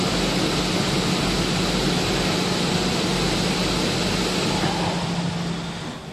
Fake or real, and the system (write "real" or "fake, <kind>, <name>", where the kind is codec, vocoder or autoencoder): real